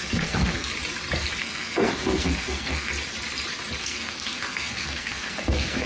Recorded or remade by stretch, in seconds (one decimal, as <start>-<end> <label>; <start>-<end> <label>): 0.0-0.7 remade; 0.7-1.4 recorded; 1.4-2.9 remade; 2.9-3.8 recorded; 3.8-5.9 remade